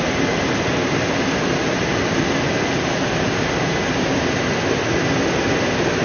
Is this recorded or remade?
recorded